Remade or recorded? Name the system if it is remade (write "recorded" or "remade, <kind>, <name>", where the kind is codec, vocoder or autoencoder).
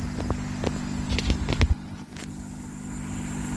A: recorded